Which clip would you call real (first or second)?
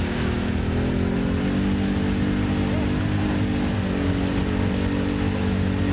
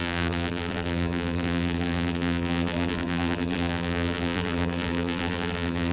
first